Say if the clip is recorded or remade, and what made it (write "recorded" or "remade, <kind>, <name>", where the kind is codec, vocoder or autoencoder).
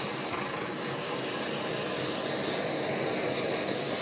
recorded